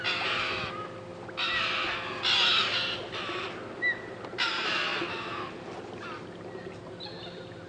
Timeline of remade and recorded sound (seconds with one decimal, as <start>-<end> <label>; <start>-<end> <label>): 0.0-6.6 recorded; 6.6-7.7 remade